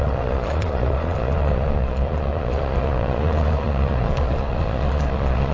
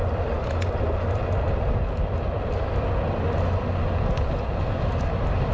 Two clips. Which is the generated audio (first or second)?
first